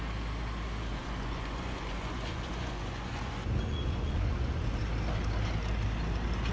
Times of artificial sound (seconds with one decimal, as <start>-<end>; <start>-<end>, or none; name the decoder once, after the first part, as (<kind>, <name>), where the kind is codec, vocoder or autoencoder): 0.9-4.8 (vocoder, Vocos)